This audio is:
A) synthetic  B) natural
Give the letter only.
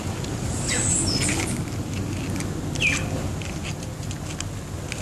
B